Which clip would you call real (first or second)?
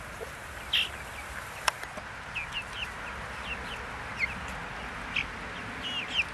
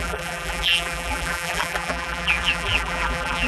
first